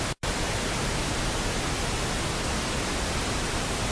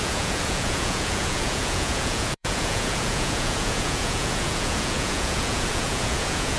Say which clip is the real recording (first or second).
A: first